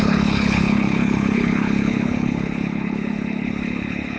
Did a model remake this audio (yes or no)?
yes